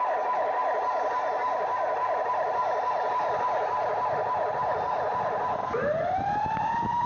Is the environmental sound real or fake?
real